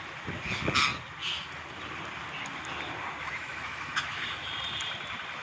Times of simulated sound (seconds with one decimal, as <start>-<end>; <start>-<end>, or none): 3.2-4.5